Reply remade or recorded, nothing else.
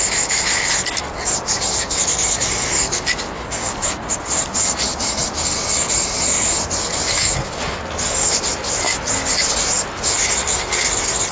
recorded